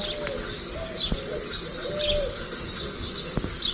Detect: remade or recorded recorded